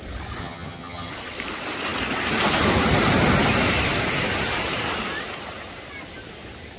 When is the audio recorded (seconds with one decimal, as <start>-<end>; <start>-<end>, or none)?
0.0-0.4; 1.1-6.8